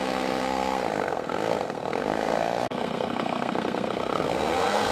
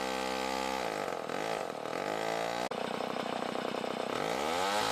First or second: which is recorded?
second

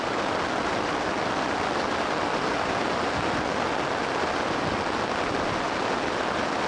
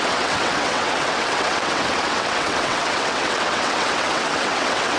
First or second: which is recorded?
first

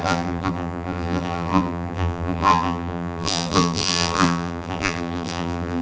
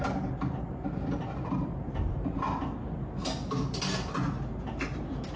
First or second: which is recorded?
second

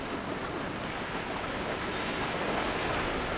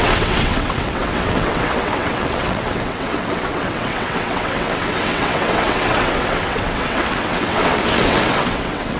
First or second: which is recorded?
first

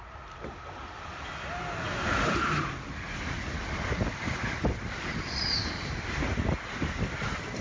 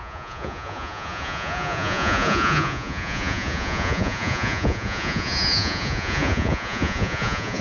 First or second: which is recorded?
first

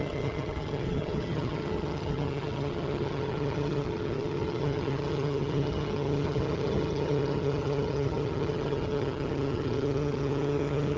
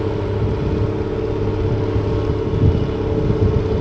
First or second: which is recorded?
second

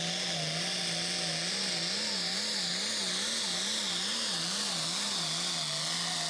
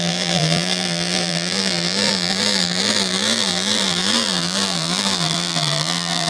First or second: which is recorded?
first